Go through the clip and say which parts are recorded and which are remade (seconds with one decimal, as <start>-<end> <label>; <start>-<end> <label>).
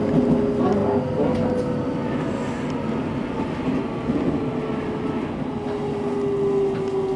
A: 0.0-7.2 recorded